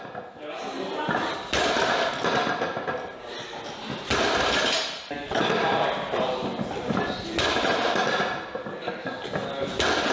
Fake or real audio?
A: real